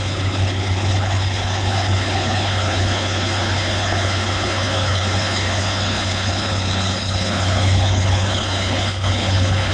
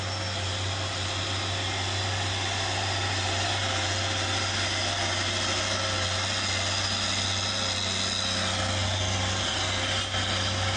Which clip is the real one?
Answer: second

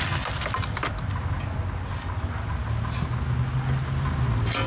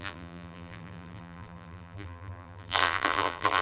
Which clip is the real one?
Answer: first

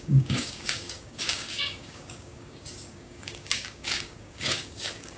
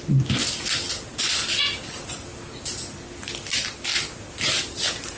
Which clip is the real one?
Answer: second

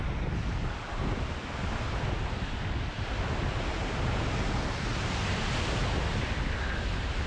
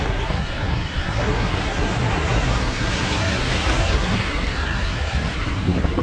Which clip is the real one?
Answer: first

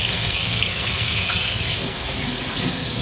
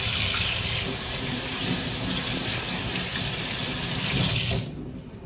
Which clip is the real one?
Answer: second